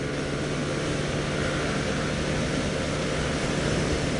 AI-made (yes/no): no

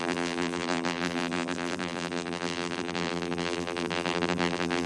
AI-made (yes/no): yes